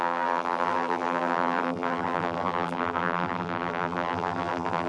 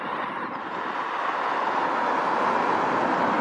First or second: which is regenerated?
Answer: first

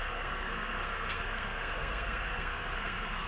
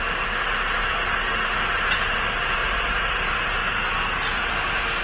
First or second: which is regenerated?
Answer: first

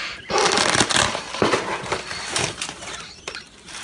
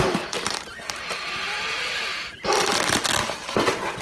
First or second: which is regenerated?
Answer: first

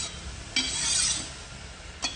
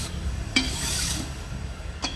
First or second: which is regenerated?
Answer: second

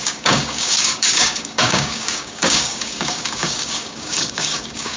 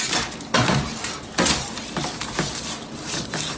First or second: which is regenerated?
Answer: first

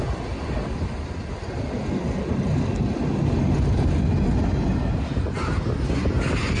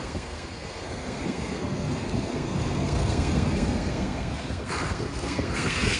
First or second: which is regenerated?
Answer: second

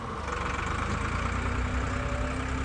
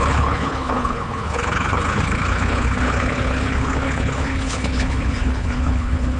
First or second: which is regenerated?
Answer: second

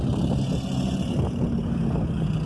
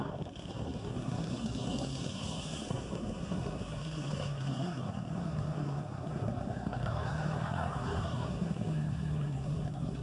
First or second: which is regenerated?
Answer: second